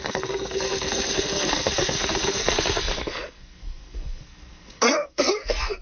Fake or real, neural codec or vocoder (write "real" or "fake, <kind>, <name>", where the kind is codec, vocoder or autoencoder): fake, codec, SNAC